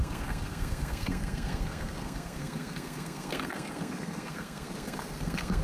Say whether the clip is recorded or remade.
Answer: remade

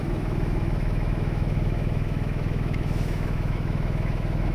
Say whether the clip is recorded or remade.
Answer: remade